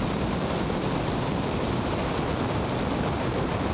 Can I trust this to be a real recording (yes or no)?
yes